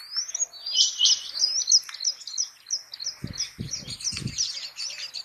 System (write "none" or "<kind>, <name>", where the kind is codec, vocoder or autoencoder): none